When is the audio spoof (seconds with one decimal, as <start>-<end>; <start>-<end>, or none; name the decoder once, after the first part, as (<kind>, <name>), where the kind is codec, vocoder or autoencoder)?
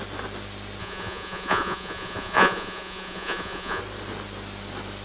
0.8-3.8 (vocoder, Vocos)